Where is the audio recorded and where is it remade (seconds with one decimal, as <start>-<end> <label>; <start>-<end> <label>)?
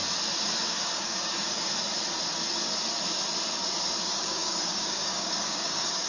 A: 0.0-0.7 recorded; 0.7-1.7 remade; 1.7-4.0 recorded; 4.0-6.1 remade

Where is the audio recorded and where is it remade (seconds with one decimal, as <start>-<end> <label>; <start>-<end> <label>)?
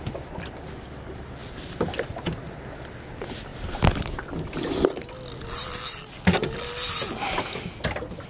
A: 0.0-8.3 recorded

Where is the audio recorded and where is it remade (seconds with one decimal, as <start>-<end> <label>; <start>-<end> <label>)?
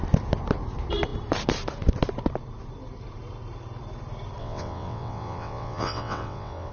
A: 0.0-4.4 recorded; 4.4-6.7 remade